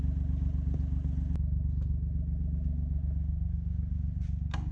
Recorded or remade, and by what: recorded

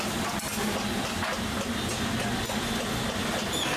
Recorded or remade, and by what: recorded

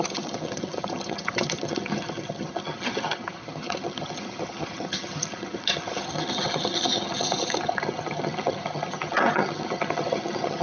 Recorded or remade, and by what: remade, vocoder, HiFi-GAN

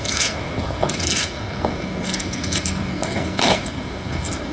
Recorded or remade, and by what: remade, codec, SNAC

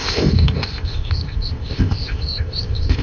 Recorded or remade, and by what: remade, codec, ZipCodec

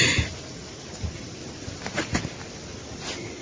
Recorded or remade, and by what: recorded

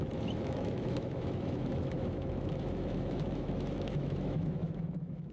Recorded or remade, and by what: remade, autoencoder, DAC-VAE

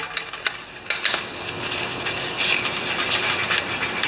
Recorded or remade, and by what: recorded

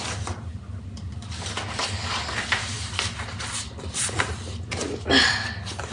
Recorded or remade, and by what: remade, vocoder, BigVGAN v2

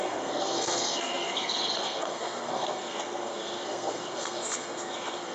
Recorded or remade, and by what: remade, codec, SNAC